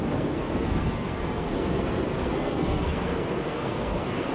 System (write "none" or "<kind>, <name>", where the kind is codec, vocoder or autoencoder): codec, SNAC